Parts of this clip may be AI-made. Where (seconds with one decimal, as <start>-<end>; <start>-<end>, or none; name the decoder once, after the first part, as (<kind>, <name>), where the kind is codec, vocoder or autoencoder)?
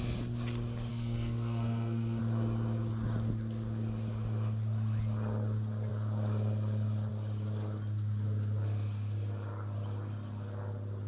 0.9-2.2 (codec, SNAC)